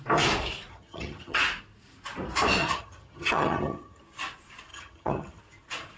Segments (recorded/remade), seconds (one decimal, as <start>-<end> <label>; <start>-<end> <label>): 0.0-0.7 recorded; 0.7-1.4 remade; 1.4-2.6 recorded; 2.6-4.0 remade; 4.0-4.7 recorded; 4.7-5.4 remade; 5.4-6.0 recorded